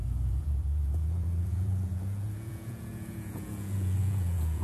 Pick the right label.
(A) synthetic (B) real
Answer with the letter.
A